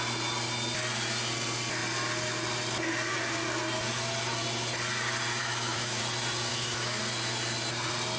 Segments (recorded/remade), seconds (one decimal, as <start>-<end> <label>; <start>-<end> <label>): 0.0-5.4 recorded; 5.4-6.0 remade; 6.0-6.5 recorded; 6.5-7.0 remade; 7.0-8.2 recorded

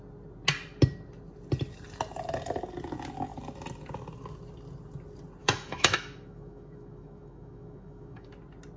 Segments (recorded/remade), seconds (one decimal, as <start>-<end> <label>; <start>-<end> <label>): 0.0-5.4 recorded; 5.4-8.3 remade; 8.3-8.8 recorded

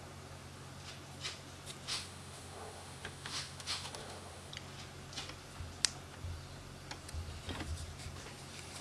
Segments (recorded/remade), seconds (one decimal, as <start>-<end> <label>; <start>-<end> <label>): 0.0-1.9 recorded; 1.9-4.5 remade; 4.5-8.8 recorded

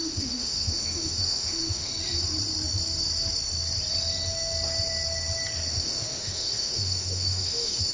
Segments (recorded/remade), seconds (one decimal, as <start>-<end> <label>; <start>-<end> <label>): 0.0-1.9 remade; 1.9-5.7 recorded; 5.7-7.9 remade

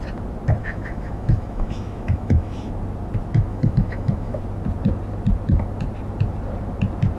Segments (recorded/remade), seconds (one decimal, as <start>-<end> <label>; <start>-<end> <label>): 0.0-0.6 recorded; 0.6-2.7 remade; 2.7-3.5 recorded; 3.5-4.4 remade; 4.4-7.2 recorded